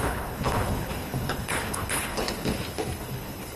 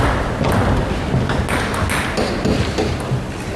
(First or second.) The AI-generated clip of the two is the first